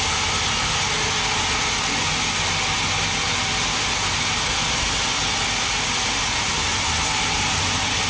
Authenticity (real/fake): real